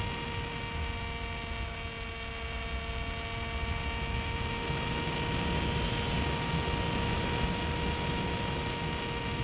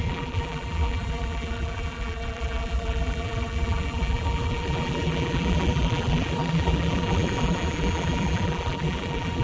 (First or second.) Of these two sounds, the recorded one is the first